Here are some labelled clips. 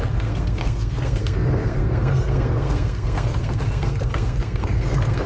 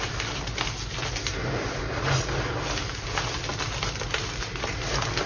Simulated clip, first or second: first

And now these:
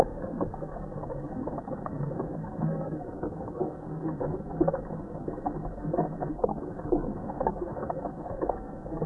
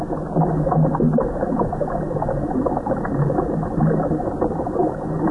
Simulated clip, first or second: first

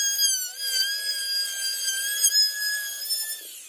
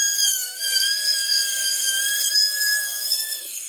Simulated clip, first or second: second